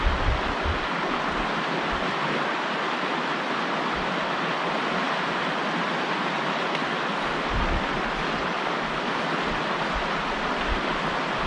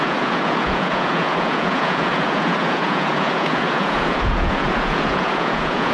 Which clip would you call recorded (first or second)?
first